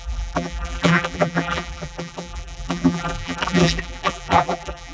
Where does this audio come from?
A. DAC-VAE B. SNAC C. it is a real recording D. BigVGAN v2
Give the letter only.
D